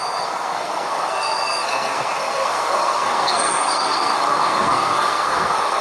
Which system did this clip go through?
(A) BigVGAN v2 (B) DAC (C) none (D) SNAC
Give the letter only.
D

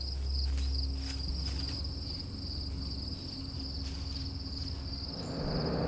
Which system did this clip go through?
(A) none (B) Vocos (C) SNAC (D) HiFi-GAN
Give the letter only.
A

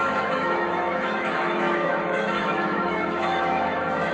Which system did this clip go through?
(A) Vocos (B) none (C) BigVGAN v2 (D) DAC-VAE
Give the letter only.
D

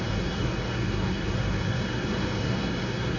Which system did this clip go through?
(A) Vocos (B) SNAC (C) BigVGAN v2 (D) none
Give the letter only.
B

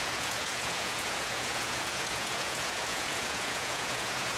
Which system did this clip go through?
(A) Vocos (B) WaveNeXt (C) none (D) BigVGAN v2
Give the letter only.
A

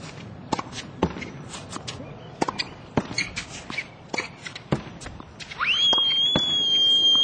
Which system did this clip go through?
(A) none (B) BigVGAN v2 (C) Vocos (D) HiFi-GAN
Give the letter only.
A